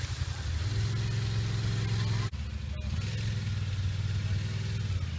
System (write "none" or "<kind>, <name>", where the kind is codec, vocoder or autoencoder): none